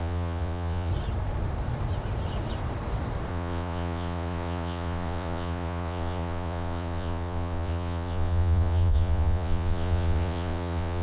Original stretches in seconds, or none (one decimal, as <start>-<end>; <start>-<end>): 0.9-3.3